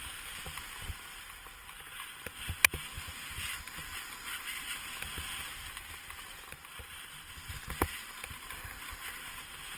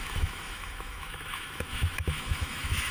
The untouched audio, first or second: first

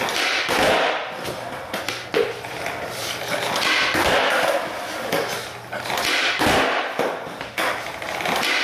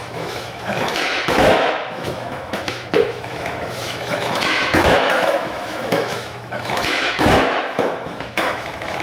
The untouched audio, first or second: first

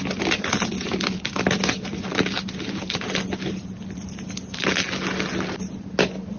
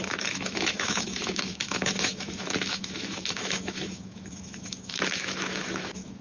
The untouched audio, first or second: first